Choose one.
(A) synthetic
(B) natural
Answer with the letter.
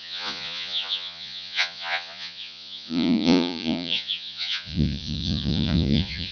A